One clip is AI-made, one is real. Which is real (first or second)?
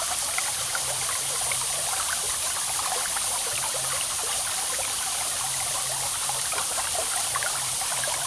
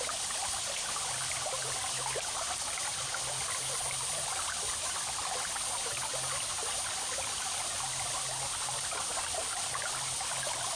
second